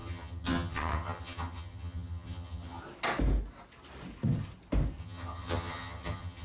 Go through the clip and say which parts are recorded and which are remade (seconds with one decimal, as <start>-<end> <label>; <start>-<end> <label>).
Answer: 0.0-2.8 remade; 2.8-5.0 recorded; 5.0-6.4 remade